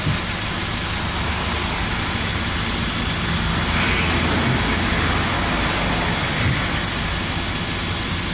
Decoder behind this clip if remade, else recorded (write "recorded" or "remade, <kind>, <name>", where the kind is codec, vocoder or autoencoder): recorded